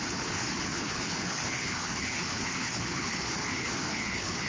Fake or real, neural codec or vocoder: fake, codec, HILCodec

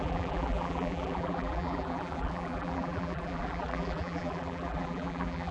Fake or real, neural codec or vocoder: fake, vocoder, BigVGAN v2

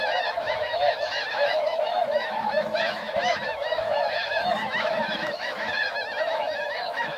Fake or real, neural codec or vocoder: fake, autoencoder, DAC-VAE